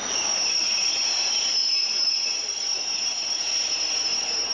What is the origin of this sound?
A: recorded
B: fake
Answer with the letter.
A